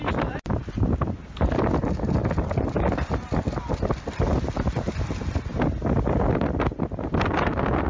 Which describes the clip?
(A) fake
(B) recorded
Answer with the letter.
B